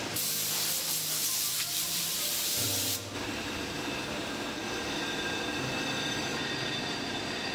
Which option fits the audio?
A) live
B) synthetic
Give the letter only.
B